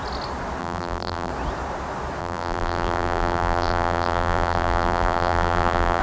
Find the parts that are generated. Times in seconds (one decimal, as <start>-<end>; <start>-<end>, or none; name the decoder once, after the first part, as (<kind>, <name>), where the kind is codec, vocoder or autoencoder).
0.6-1.3 (vocoder, BigVGAN v2); 2.2-6.0